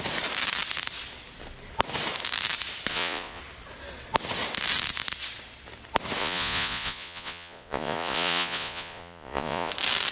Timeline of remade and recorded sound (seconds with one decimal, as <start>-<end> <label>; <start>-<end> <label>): 0.0-2.9 recorded; 2.9-3.4 remade; 3.4-6.2 recorded; 6.2-9.7 remade; 9.7-10.1 recorded